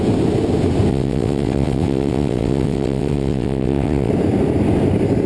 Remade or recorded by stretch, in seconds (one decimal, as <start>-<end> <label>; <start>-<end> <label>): 0.0-0.9 recorded; 0.9-4.1 remade; 4.1-5.3 recorded